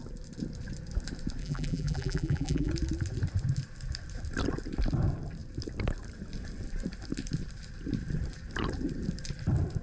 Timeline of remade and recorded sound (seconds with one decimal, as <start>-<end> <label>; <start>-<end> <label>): 0.0-1.4 recorded; 1.4-2.7 remade; 2.7-9.8 recorded